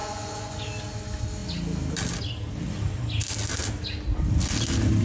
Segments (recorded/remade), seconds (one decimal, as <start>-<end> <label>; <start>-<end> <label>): 0.0-0.6 remade; 0.6-5.0 recorded